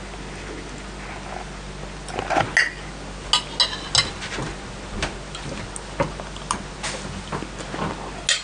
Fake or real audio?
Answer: real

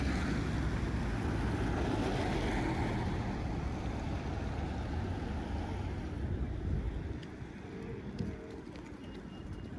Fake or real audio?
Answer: real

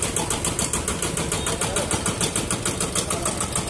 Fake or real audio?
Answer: real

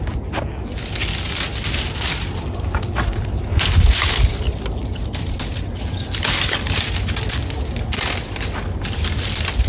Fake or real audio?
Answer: real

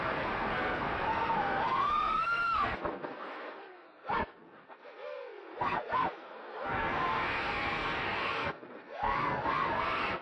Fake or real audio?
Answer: fake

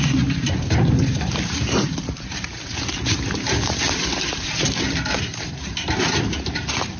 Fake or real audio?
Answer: fake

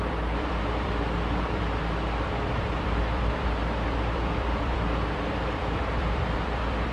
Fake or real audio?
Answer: fake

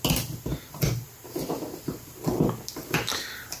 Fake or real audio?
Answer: real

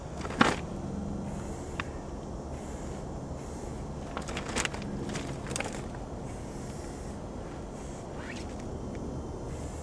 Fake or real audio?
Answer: real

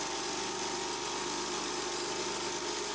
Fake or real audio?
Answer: real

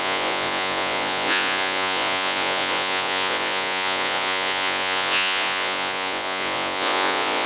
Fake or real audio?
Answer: fake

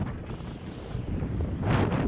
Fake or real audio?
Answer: real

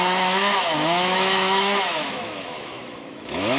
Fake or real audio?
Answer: fake